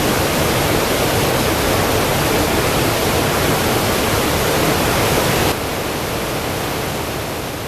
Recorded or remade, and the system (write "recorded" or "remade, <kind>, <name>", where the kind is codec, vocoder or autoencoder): recorded